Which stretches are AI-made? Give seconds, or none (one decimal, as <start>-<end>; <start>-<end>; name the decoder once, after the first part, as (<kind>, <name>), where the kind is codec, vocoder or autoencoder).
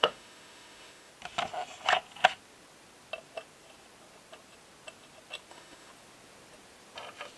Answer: 0.0-1.1 (autoencoder, DAC-VAE); 5.5-5.9